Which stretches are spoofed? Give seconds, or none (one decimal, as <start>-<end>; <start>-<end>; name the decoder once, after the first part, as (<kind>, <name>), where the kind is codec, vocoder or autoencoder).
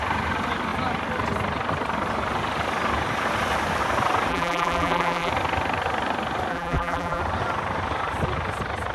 4.3-5.3 (vocoder, BigVGAN v2); 6.5-7.2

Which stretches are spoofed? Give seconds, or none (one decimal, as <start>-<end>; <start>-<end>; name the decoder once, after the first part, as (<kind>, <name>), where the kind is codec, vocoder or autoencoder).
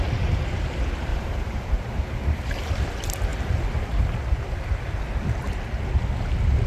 1.1-2.7 (vocoder, BigVGAN v2)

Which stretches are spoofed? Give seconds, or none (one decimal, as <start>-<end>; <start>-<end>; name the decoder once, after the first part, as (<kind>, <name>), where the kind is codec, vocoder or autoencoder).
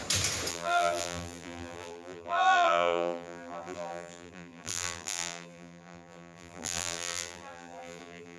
0.5-8.4 (vocoder, BigVGAN v2)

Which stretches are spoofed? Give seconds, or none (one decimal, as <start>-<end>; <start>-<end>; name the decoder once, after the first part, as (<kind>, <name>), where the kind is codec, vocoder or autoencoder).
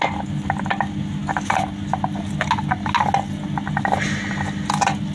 none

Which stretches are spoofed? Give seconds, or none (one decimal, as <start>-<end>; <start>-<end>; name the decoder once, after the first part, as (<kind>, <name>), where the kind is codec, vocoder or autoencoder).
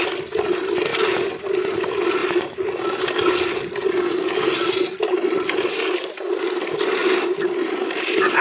0.0-0.9 (vocoder, BigVGAN v2); 1.4-2.2; 6.4-8.4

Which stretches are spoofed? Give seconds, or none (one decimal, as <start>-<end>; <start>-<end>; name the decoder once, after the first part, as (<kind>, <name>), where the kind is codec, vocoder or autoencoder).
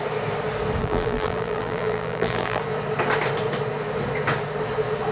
0.8-2.6 (vocoder, BigVGAN v2)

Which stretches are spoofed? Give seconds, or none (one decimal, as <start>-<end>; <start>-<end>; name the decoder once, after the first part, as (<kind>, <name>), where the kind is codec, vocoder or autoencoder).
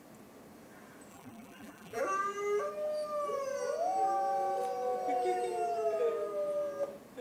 1.1-2.0 (vocoder, BigVGAN v2)